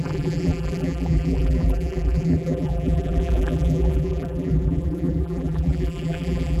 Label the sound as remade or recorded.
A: remade